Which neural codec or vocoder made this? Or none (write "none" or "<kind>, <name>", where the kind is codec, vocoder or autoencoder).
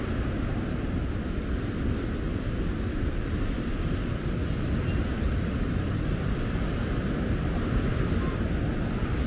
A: none